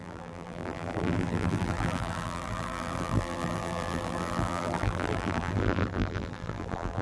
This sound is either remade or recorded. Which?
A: remade